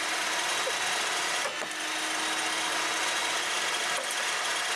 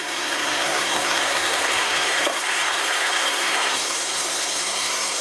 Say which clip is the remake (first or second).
second